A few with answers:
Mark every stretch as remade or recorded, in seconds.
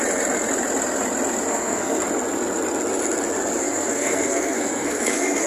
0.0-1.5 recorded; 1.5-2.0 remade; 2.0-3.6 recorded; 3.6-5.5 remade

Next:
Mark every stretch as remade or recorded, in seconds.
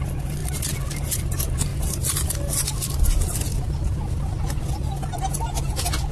0.0-6.1 recorded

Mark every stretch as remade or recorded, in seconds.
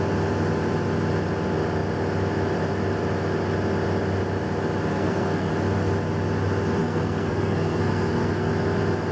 0.0-4.9 recorded; 4.9-5.5 remade; 5.5-6.8 recorded; 6.8-8.5 remade; 8.5-9.1 recorded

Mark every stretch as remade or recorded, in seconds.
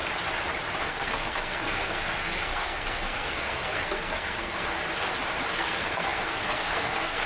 0.0-0.8 recorded; 0.8-4.8 remade; 4.8-5.5 recorded; 5.5-7.3 remade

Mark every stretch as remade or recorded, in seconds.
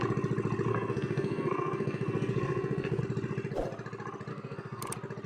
0.0-0.7 recorded; 0.7-3.0 remade; 3.0-4.3 recorded; 4.3-4.8 remade; 4.8-5.3 recorded